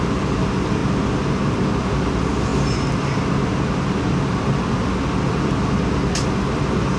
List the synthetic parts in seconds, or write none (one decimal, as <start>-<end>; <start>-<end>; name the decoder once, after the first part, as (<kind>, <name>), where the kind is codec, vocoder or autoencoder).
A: 0.0-0.8 (vocoder, BigVGAN v2); 1.8-2.5